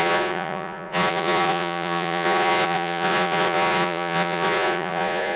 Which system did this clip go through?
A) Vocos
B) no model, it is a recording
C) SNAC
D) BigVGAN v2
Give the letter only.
A